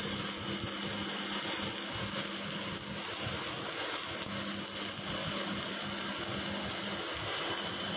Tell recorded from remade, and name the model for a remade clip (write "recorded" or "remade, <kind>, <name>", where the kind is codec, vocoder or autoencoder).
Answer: recorded